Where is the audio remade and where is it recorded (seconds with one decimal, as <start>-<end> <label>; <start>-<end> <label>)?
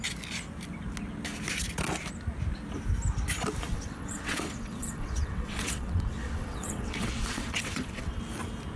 0.0-3.7 recorded; 3.7-8.2 remade; 8.2-8.8 recorded